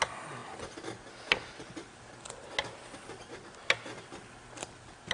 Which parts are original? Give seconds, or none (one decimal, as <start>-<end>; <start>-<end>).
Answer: 0.0-5.1

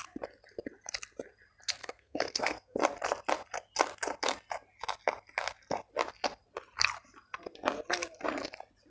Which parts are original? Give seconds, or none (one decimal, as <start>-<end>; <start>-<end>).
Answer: 0.0-1.8; 2.8-8.9

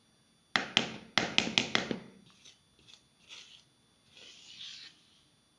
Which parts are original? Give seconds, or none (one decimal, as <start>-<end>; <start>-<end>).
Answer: 0.0-5.6

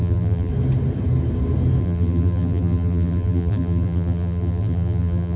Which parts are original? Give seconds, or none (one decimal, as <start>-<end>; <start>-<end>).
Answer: 0.5-1.8

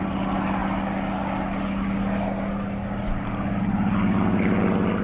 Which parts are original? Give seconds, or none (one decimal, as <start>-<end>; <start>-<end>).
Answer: 0.0-5.0